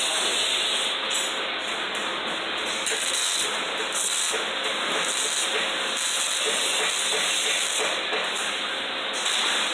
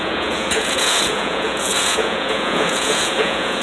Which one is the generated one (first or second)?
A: second